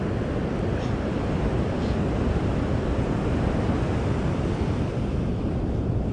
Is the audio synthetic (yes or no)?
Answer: no